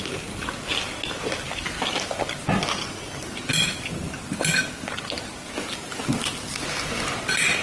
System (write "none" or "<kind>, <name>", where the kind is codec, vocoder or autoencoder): none